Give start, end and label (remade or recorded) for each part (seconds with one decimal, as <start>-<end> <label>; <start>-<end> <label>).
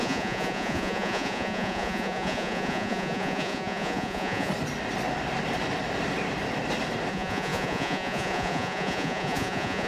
0.0-4.5 remade; 4.5-7.1 recorded; 7.1-9.9 remade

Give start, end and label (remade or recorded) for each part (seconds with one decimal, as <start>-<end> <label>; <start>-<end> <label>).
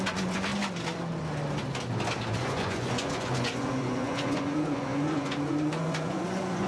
0.0-0.5 remade; 0.5-2.3 recorded; 2.3-6.7 remade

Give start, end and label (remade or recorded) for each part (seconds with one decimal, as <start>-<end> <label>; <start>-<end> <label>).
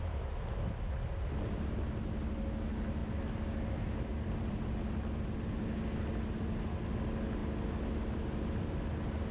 0.0-9.3 recorded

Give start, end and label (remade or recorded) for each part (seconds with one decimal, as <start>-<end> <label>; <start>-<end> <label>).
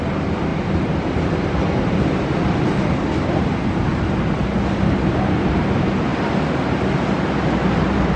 0.0-8.2 recorded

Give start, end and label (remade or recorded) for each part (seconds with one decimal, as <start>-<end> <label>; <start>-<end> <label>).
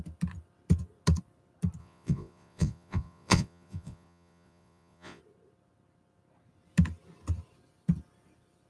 0.0-1.8 recorded; 1.8-5.2 remade; 5.2-8.7 recorded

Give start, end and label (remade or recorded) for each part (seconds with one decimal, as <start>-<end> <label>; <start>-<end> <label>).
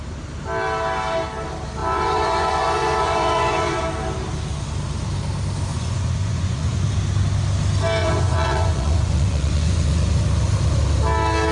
0.0-1.8 recorded; 1.8-3.8 remade; 3.8-5.7 recorded; 5.7-6.9 remade; 6.9-8.0 recorded; 8.0-10.1 remade; 10.1-11.5 recorded